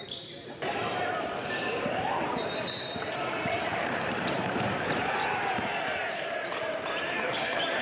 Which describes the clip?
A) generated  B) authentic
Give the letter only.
A